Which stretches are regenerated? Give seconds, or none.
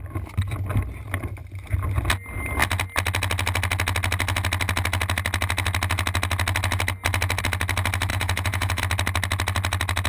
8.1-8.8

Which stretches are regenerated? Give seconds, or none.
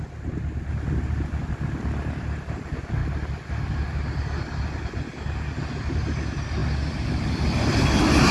none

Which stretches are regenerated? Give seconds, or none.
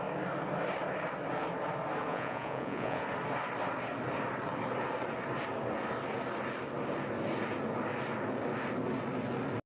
2.1-3.0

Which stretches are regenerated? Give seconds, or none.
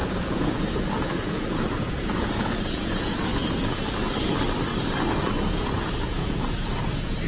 0.0-3.3; 5.5-7.3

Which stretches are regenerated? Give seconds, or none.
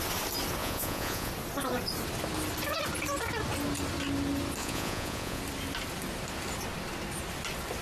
0.6-1.3; 4.6-5.4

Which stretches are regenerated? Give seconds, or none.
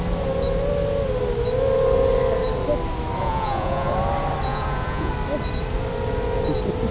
3.2-3.9; 4.5-5.1